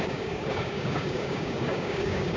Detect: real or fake fake